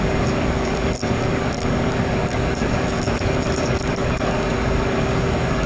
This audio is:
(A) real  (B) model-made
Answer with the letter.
B